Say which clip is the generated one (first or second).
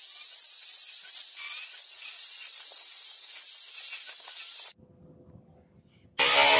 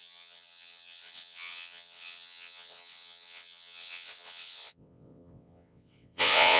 second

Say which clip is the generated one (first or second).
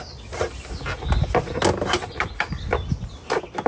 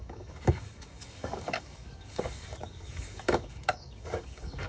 second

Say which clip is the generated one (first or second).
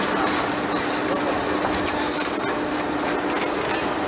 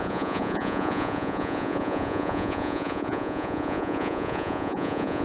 second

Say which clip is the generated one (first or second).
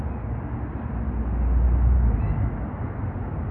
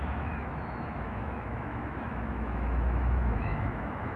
second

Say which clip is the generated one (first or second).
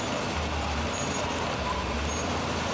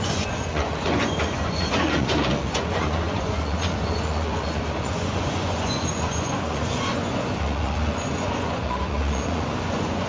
second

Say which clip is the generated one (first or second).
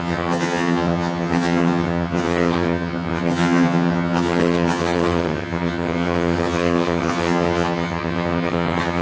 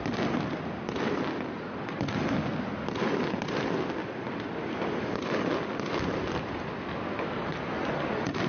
first